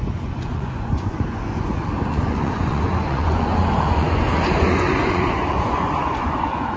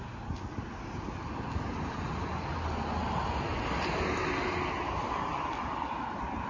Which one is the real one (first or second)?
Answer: second